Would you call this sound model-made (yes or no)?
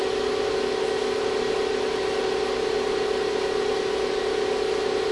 no